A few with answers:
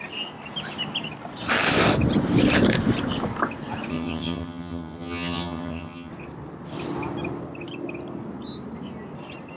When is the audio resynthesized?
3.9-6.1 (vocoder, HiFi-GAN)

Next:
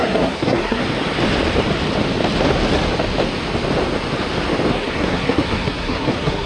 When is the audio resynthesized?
0.0-0.8 (codec, SNAC); 4.7-6.5

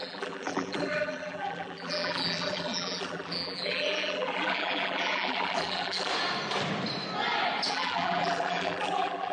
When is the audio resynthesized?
0.0-6.1 (vocoder, BigVGAN v2); 7.7-9.3